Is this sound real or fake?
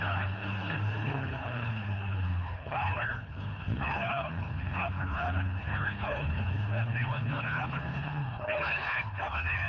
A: fake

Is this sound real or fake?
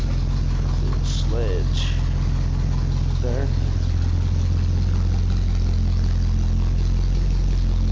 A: real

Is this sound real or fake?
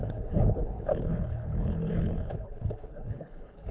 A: fake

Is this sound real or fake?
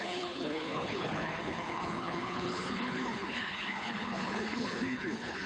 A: fake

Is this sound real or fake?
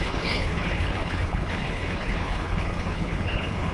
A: fake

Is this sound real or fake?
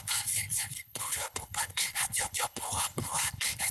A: fake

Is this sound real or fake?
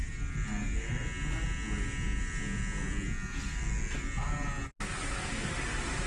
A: real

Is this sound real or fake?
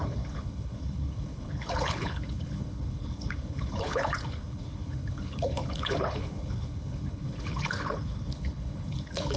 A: fake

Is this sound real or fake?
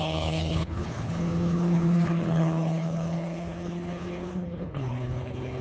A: fake